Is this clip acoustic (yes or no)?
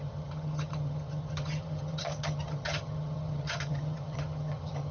no